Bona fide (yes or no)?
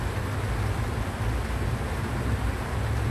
yes